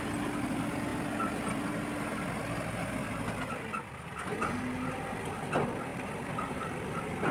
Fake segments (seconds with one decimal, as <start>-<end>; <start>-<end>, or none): 5.9-7.3